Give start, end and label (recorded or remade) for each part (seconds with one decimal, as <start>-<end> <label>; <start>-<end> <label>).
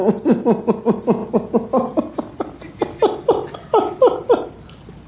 0.0-5.1 recorded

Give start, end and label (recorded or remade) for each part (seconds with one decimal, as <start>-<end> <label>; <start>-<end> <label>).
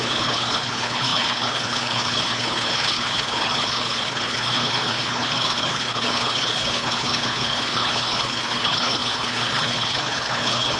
0.0-10.8 remade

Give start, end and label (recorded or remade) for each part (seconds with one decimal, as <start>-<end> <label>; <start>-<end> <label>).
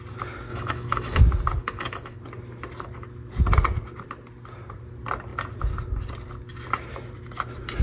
0.0-0.5 recorded; 0.5-1.2 remade; 1.2-1.6 recorded; 1.6-2.2 remade; 2.2-7.8 recorded